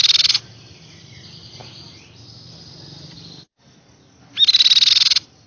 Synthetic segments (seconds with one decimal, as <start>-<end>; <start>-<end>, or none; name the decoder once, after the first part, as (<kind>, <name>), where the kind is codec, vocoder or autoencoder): none